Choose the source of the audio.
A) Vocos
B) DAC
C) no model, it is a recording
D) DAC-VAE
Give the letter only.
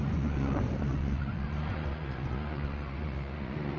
A